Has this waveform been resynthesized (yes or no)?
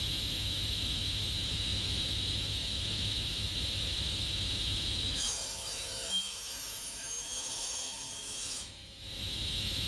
yes